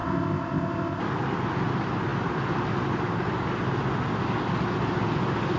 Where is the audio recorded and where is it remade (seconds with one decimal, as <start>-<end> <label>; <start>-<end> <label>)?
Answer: 0.0-1.0 remade; 1.0-5.6 recorded